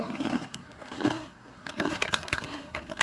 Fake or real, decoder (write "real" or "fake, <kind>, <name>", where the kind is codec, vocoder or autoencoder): fake, codec, SNAC